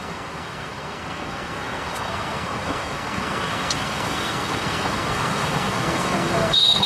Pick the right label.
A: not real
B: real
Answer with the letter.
A